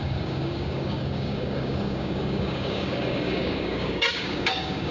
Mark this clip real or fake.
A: fake